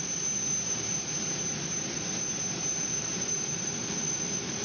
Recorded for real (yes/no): yes